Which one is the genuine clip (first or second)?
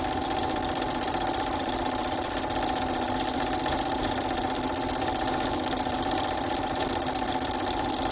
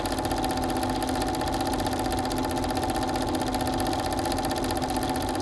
second